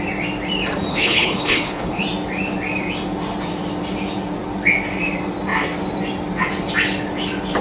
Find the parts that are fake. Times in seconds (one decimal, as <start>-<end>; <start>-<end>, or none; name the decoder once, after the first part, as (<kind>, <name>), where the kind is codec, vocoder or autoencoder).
0.9-2.0 (codec, HILCodec)